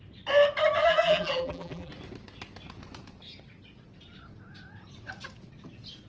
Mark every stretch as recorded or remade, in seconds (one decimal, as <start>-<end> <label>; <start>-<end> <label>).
0.0-0.8 recorded; 0.8-1.9 remade; 1.9-6.1 recorded